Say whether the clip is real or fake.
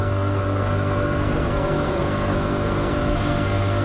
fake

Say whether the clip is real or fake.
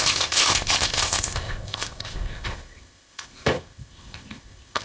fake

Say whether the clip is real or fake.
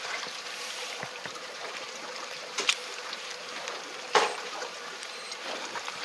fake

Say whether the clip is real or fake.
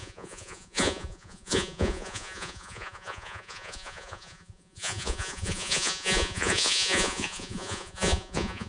fake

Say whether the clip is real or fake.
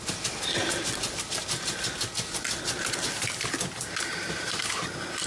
real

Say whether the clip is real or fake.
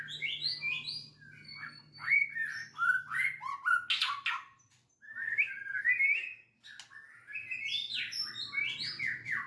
real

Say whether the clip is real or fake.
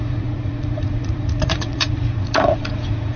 fake